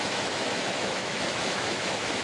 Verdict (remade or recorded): remade